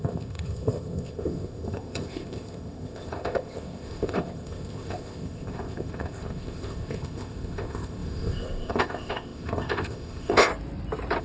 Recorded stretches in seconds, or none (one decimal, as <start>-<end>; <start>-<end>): 10.5-11.2